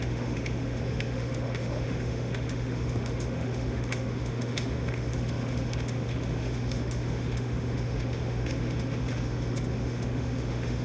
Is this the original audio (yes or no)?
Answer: no